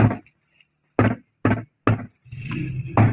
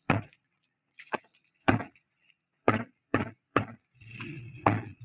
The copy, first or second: second